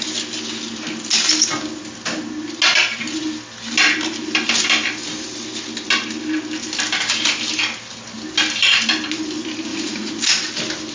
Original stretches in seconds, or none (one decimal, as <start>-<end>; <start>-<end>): 0.0-9.7; 10.2-10.9